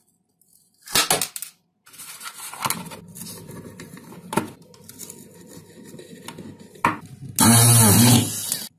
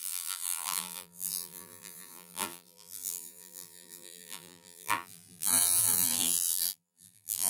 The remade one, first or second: second